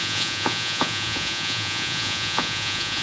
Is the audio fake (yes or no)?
yes